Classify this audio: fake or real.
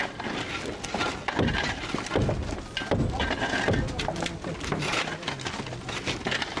real